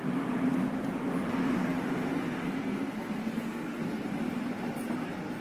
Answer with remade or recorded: recorded